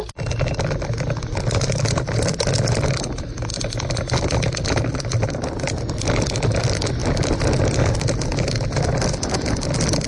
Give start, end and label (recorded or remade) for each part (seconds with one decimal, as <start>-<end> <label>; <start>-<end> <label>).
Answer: 0.0-10.1 recorded